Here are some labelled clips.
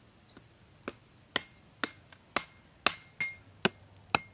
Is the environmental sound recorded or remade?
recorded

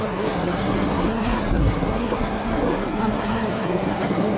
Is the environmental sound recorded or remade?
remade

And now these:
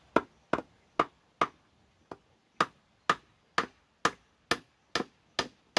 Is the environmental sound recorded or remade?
recorded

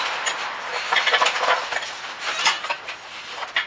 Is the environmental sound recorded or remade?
remade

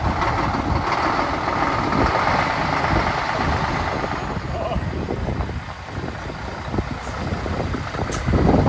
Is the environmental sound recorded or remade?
recorded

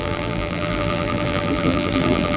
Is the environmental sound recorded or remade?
remade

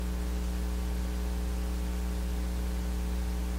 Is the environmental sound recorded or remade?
recorded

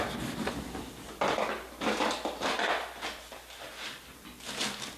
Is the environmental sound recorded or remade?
recorded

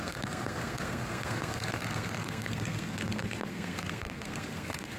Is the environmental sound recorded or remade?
remade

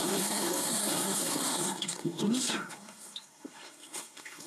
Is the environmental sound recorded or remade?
remade